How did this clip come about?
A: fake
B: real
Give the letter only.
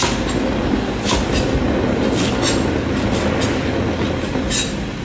B